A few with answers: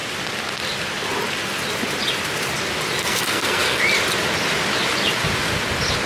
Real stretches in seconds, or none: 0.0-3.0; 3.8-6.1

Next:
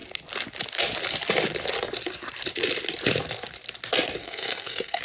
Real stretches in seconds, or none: 0.0-4.2

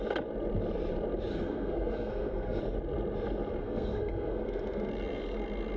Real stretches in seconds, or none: 0.0-1.3; 2.6-3.6; 4.9-5.8

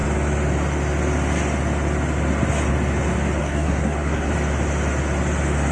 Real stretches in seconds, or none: 0.0-3.4; 4.3-5.7